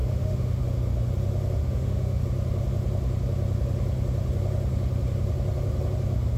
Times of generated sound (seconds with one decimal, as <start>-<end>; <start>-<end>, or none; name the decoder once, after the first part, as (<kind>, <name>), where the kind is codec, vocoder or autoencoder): 0.0-0.6 (autoencoder, DAC-VAE); 1.6-2.2